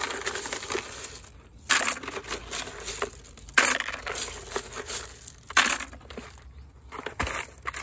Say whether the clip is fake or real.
real